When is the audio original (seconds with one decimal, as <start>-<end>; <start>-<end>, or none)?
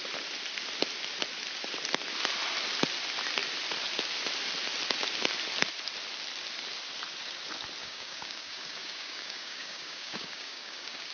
0.0-7.8